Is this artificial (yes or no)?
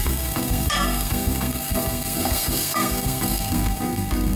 yes